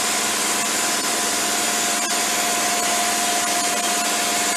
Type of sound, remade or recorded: recorded